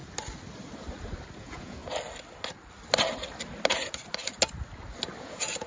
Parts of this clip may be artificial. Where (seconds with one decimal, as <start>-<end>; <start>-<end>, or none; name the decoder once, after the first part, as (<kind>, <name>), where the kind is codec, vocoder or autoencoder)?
1.4-1.8 (vocoder, Vocos); 5.2-5.7